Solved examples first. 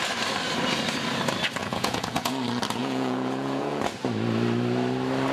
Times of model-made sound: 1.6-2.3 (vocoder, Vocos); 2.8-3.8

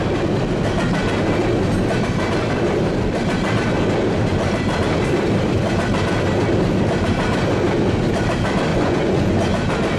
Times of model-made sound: 8.7-9.3 (vocoder, Vocos)

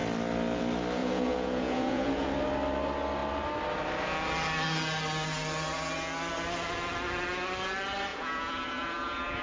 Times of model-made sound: 1.0-2.3 (vocoder, Vocos); 8.1-9.4

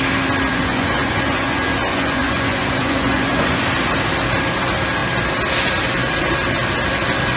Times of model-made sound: 0.5-3.6 (vocoder, Vocos)

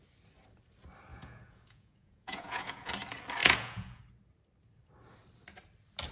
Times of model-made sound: 1.1-2.9 (vocoder, Vocos); 3.4-4.0

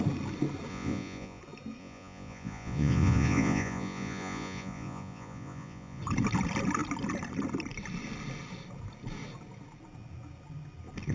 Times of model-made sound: 0.7-1.4 (vocoder, Vocos); 1.8-6.0